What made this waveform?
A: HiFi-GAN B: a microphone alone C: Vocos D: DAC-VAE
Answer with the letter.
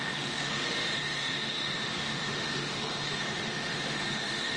D